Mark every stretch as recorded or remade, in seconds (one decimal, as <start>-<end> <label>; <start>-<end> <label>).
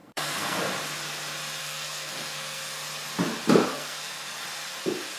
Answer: 0.0-0.6 remade; 0.6-1.6 recorded; 1.6-2.6 remade; 2.6-3.7 recorded; 3.7-4.4 remade; 4.4-5.2 recorded